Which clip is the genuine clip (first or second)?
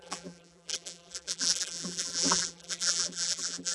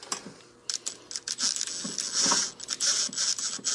second